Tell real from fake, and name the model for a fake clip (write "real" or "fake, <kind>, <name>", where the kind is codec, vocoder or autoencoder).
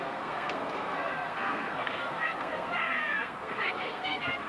fake, codec, SNAC